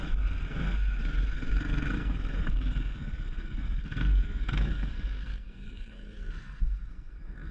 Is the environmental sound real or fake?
fake